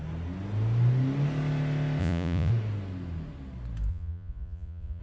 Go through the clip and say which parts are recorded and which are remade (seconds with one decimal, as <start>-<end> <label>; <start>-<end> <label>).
0.0-2.0 recorded; 2.0-2.5 remade; 2.5-3.9 recorded; 3.9-5.0 remade